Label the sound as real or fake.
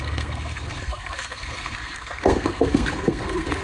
fake